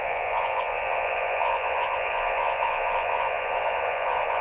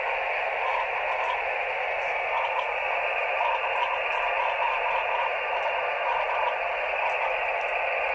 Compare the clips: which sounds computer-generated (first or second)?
first